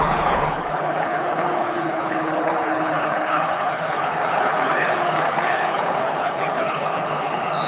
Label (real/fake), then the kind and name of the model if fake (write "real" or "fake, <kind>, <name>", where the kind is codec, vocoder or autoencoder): fake, codec, HILCodec